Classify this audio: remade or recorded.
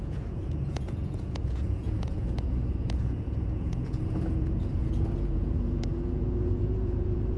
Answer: remade